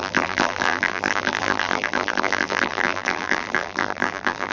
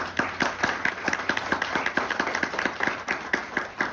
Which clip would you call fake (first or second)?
first